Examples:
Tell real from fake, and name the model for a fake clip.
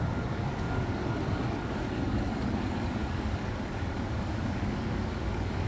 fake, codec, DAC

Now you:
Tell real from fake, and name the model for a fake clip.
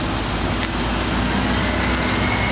real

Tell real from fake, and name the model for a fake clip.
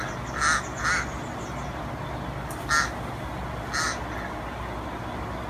real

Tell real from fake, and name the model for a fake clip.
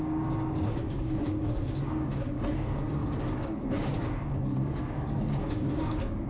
fake, codec, DAC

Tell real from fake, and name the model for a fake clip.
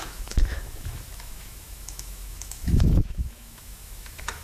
fake, autoencoder, DAC-VAE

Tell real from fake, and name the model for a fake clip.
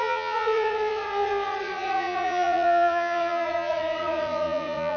fake, vocoder, Vocos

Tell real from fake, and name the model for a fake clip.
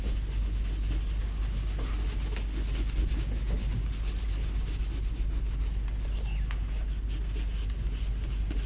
real